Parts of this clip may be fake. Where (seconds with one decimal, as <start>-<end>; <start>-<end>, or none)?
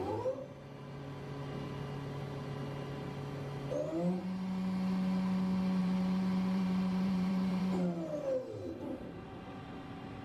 5.8-7.6